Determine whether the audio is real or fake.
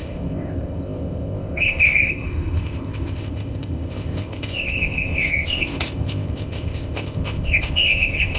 fake